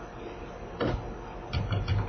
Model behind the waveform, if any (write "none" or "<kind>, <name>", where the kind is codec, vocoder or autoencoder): none